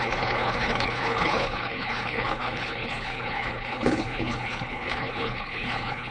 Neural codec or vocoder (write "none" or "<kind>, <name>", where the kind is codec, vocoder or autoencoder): codec, HILCodec